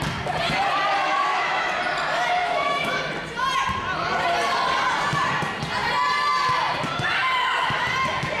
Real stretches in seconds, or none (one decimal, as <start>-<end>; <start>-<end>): 0.0-1.1; 1.7-2.4; 3.0-8.4